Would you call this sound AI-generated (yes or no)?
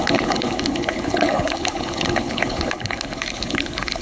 yes